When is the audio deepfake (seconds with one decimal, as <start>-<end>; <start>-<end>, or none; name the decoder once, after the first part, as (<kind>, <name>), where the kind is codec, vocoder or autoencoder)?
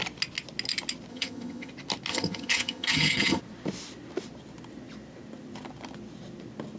1.1-1.7 (vocoder, HiFi-GAN); 2.1-3.4